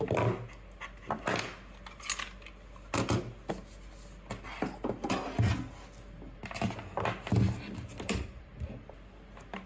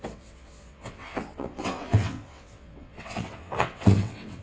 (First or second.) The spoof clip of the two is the second